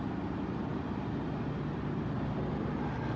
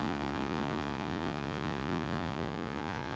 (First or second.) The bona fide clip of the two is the first